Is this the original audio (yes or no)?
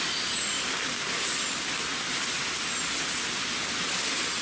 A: yes